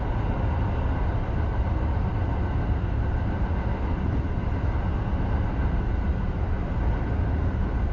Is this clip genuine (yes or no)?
yes